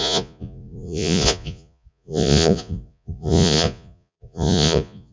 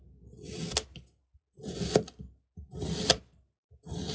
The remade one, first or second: first